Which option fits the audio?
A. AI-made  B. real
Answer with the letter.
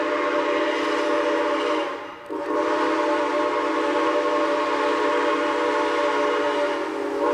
B